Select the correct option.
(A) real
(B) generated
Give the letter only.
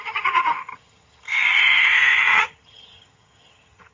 B